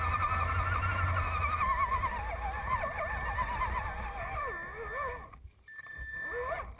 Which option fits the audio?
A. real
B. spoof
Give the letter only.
A